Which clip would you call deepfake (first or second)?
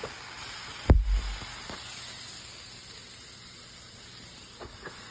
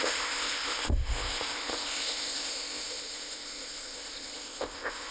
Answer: second